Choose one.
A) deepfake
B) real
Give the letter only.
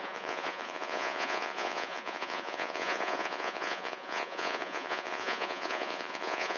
A